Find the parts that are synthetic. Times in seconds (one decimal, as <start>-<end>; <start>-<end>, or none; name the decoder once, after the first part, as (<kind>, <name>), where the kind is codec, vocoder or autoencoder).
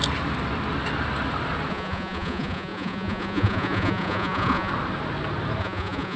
1.7-4.7 (vocoder, Vocos); 5.6-6.2